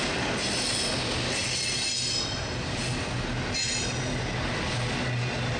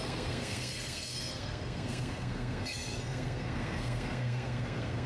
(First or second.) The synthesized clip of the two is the second